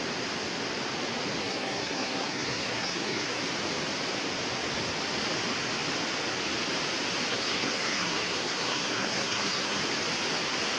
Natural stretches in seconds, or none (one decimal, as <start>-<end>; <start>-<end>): 0.0-1.4; 3.4-7.3; 9.8-10.8